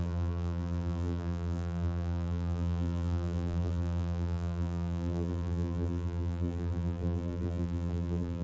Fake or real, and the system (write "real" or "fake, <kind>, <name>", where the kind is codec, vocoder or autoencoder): fake, vocoder, BigVGAN v2